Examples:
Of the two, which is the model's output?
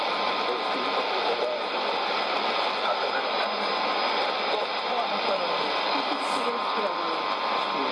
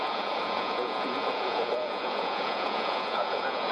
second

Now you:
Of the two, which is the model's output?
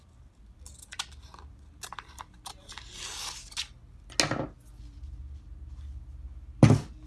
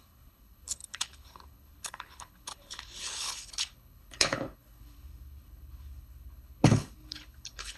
second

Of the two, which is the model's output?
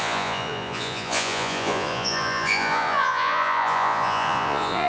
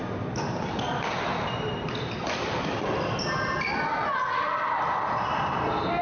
first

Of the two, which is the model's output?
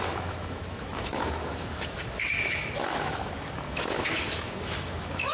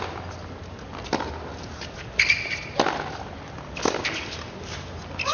first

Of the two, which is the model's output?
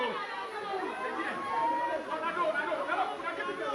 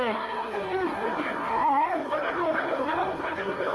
second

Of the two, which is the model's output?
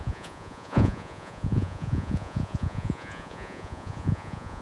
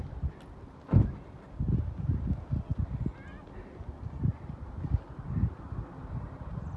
first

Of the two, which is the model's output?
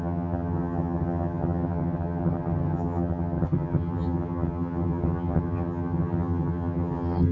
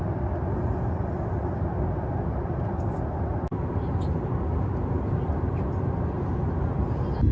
first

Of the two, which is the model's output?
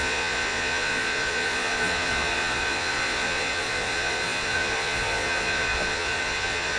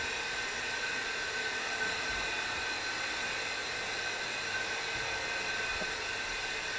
first